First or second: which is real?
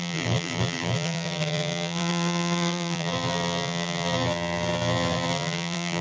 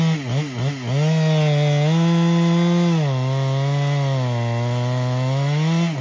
second